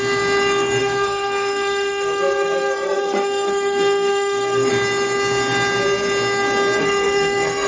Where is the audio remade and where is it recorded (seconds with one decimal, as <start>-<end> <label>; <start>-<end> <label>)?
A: 0.0-0.8 recorded; 0.8-4.7 remade; 4.7-6.8 recorded; 6.8-7.7 remade